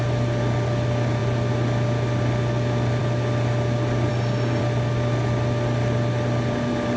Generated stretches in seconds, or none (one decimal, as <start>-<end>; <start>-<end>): 4.1-4.6